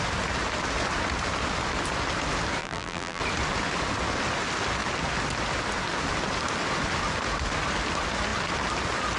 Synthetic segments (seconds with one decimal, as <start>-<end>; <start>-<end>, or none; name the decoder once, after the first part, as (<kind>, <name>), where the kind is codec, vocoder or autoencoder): 2.6-3.2 (vocoder, BigVGAN v2)